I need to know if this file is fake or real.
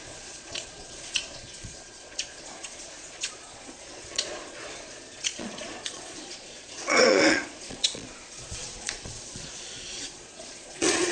fake